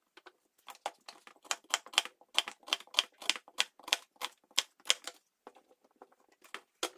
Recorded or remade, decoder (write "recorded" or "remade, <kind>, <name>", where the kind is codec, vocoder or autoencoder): recorded